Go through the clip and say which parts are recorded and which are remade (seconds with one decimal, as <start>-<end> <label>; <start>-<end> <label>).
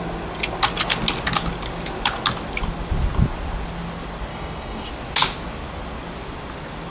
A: 0.0-4.3 recorded; 4.3-4.9 remade; 4.9-6.9 recorded